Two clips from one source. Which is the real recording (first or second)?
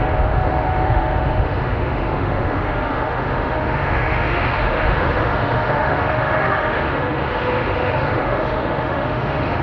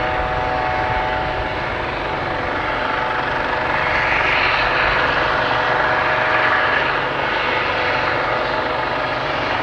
second